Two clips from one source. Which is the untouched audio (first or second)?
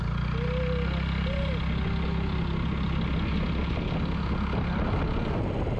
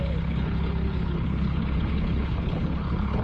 first